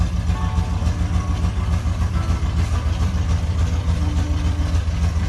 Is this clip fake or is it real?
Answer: real